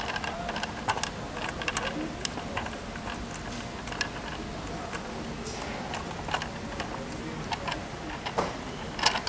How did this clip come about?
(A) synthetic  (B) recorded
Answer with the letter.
B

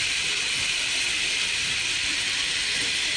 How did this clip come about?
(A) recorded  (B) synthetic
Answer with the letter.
B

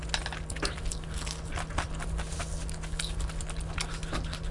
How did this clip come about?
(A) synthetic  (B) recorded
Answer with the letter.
B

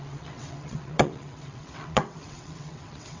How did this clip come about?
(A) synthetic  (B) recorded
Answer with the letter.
A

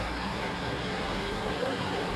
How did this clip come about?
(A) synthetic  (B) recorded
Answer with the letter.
A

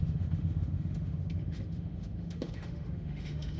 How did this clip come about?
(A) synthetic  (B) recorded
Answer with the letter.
A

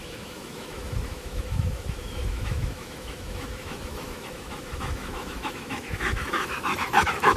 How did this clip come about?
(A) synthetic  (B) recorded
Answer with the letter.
A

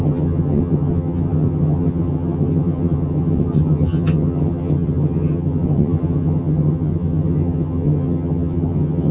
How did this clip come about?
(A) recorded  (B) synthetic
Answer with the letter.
B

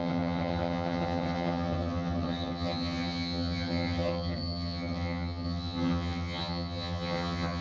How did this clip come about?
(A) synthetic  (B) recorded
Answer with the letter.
A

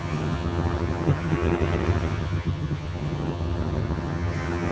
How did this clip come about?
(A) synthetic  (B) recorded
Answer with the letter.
A